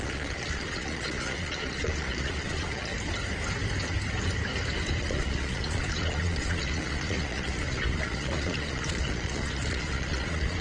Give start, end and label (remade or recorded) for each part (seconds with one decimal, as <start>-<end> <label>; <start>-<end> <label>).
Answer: 0.0-2.9 remade; 2.9-5.0 recorded; 5.0-10.6 remade